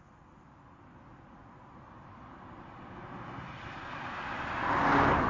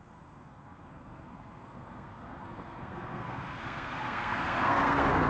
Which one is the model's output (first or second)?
second